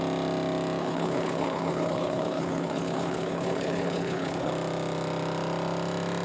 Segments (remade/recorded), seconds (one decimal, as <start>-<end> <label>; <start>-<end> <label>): 0.0-0.8 recorded; 0.8-4.5 remade; 4.5-6.2 recorded

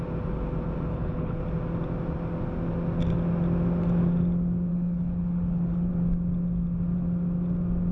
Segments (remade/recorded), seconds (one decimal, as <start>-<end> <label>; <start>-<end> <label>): 0.0-0.9 recorded; 0.9-1.4 remade; 1.4-4.7 recorded; 4.7-5.9 remade; 5.9-7.9 recorded

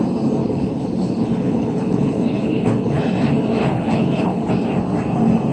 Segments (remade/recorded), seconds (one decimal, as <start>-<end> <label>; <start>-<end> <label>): 0.0-0.4 recorded; 0.4-3.0 remade; 3.0-3.6 recorded; 3.6-4.5 remade; 4.5-5.5 recorded

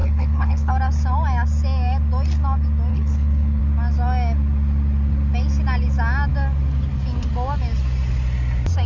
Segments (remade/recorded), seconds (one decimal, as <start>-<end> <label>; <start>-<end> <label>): 0.0-0.7 remade; 0.7-2.9 recorded; 2.9-3.6 remade; 3.6-8.9 recorded

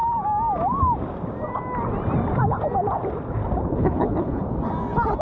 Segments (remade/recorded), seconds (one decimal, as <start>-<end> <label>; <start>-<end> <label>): 0.0-3.7 recorded; 3.7-4.4 remade; 4.4-5.2 recorded